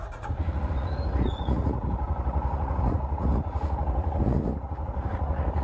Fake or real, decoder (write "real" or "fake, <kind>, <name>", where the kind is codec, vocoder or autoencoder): fake, vocoder, Vocos